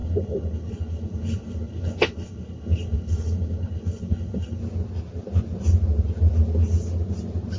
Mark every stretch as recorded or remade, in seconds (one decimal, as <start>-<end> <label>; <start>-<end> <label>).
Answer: 0.0-4.6 remade; 4.6-7.6 recorded